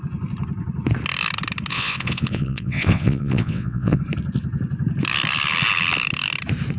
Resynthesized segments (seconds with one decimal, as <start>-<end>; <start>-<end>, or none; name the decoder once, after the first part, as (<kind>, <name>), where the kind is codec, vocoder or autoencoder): 1.7-4.0 (vocoder, WaveNeXt)